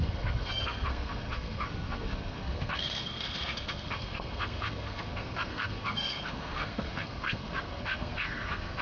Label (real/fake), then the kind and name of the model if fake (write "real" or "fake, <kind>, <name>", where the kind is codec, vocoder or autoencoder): fake, codec, SNAC